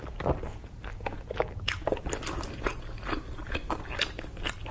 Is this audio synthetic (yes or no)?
no